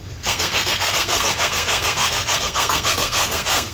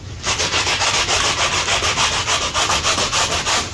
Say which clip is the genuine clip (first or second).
second